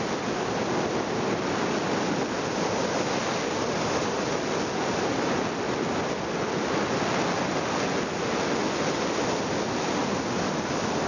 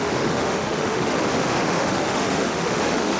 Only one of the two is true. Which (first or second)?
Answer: first